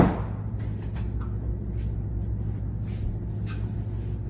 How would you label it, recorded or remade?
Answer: recorded